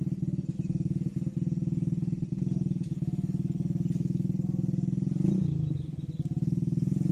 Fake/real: real